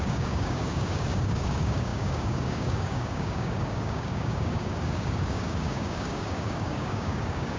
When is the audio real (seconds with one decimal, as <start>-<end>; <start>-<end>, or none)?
none